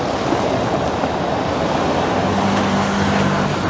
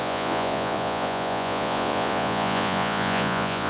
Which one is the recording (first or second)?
first